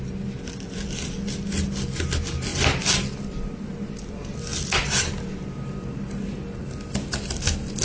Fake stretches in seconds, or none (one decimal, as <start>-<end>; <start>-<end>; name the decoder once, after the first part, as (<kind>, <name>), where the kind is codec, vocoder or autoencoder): none